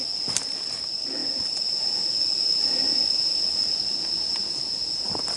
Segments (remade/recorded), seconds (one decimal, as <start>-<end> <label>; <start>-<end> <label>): 0.0-5.4 recorded